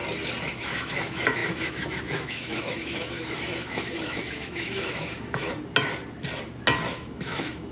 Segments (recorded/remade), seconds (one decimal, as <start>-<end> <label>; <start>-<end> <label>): 0.0-0.5 recorded; 0.5-5.5 remade; 5.5-6.9 recorded; 6.9-7.7 remade